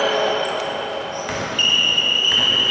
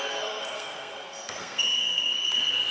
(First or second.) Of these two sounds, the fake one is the second